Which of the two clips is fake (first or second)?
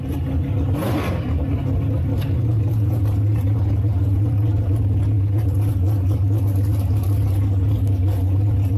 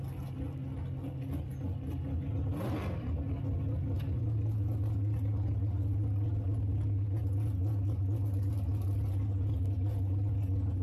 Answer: first